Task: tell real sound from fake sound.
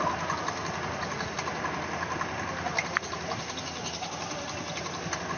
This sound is real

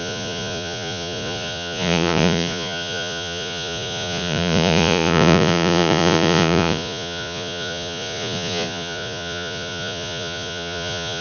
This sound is fake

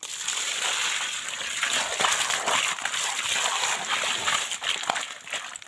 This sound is real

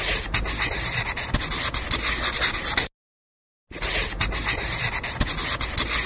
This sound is real